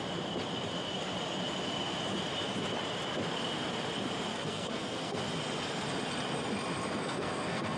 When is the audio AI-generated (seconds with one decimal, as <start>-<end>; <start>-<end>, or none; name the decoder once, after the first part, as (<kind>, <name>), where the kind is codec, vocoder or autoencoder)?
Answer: 4.3-5.2 (codec, SNAC); 7.0-7.8